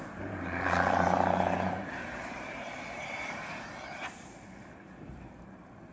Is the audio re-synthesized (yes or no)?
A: yes